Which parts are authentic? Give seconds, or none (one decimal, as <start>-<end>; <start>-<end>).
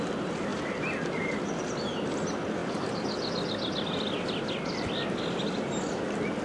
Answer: 0.0-0.5; 1.8-2.6; 4.5-6.4